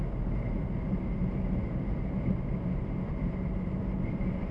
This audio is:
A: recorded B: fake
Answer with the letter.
A